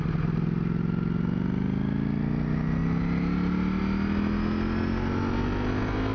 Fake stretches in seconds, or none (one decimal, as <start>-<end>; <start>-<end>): none